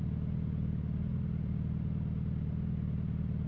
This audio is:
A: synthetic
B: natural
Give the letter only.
B